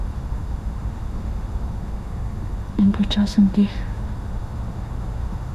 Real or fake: fake